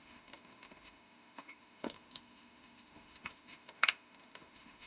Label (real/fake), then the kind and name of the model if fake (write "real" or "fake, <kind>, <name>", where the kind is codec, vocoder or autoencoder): fake, autoencoder, DAC-VAE